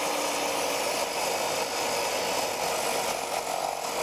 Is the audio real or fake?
real